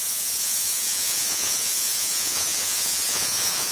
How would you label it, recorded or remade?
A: remade